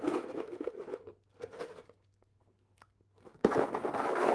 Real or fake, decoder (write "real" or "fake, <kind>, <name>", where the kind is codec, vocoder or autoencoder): fake, codec, SNAC